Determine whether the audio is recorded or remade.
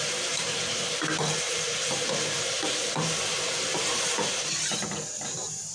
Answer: remade